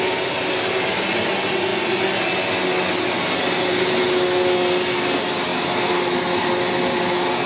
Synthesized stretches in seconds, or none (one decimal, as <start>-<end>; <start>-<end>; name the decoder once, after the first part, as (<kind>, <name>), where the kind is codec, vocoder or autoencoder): none